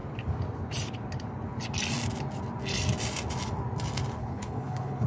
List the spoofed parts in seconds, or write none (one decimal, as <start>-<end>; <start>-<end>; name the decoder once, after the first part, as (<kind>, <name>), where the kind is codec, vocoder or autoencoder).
4.2-5.1 (codec, HILCodec)